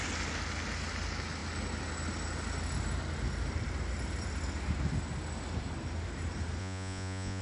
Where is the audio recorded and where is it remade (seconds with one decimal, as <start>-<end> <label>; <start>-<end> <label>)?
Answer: 0.0-6.6 recorded; 6.6-7.4 remade